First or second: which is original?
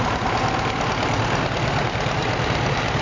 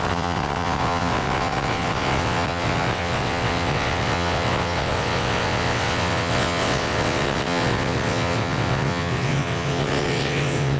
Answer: first